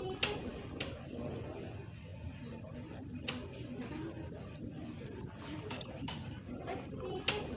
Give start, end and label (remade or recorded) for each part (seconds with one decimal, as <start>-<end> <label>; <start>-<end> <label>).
0.0-0.5 recorded; 0.5-1.1 remade; 1.1-2.1 recorded; 2.1-6.0 remade; 6.0-7.6 recorded